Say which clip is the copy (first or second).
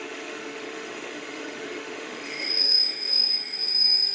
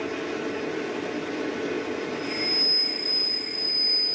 first